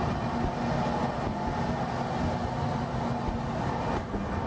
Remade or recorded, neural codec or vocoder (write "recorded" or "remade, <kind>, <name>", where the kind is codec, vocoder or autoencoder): recorded